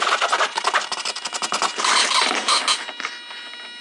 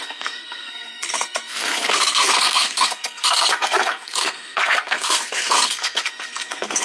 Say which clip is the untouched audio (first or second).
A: first